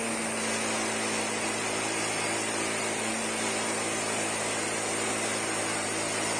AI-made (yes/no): no